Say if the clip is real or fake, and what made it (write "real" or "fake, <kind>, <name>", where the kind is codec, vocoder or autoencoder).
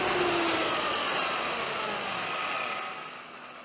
real